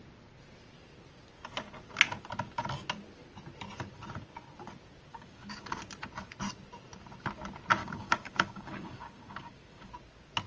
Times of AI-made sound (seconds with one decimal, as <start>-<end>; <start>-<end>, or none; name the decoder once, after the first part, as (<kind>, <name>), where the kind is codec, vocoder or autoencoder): 5.1-5.8 (codec, DAC); 7.8-9.9